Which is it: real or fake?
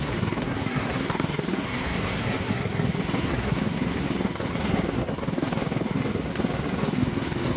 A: fake